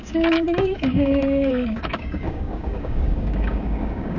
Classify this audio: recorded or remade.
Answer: remade